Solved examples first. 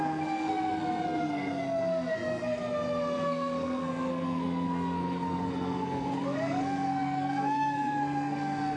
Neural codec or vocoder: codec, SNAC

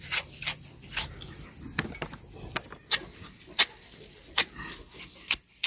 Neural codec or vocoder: none